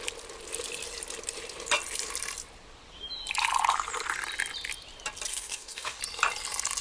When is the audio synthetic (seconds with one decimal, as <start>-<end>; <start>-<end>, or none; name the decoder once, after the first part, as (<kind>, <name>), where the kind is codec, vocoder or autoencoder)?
5.3-6.0 (codec, DAC)